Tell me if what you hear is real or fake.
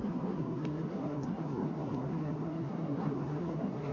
fake